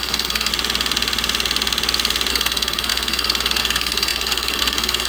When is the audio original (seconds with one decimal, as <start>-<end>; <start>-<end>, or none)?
0.5-2.3